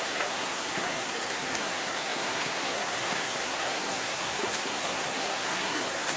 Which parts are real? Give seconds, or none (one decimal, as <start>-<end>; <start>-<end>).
none